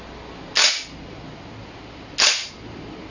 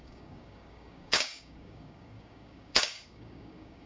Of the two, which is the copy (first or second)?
second